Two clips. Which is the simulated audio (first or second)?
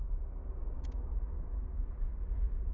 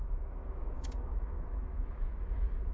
second